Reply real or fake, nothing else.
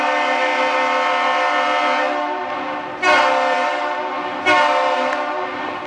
real